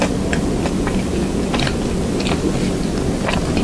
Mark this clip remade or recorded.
recorded